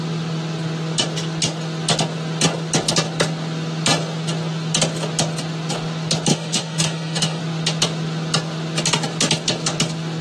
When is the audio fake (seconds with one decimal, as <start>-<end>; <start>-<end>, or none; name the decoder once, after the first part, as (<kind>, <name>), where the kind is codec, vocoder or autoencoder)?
6.3-7.4 (autoencoder, DAC-VAE)